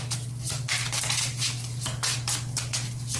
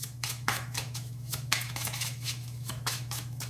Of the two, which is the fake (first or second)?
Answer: second